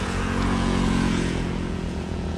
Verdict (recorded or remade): remade